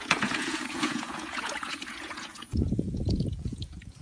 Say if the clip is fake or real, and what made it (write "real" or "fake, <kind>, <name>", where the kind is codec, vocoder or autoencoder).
fake, vocoder, Vocos